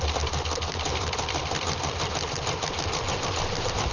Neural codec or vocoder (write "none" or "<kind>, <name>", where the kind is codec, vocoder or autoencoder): none